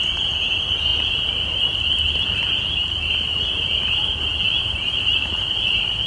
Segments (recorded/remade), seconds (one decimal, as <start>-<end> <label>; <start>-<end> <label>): 0.0-6.1 recorded